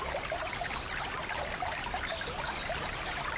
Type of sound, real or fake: real